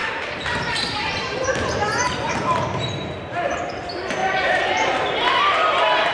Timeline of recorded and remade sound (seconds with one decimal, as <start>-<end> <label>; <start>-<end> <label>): 0.0-3.6 remade; 3.6-4.2 recorded; 4.2-5.6 remade; 5.6-6.1 recorded